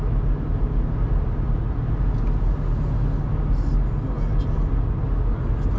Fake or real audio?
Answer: real